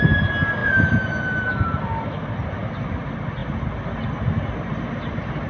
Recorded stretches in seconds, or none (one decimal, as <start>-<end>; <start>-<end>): 0.0-0.6; 1.8-5.5